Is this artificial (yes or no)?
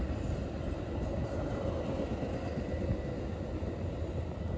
no